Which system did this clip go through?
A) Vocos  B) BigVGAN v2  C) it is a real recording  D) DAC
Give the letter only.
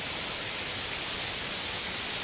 C